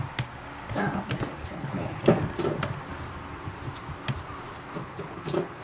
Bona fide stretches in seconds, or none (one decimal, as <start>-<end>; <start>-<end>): 0.0-1.4; 2.0-4.8